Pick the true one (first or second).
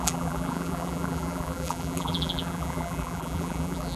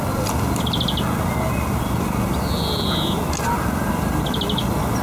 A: second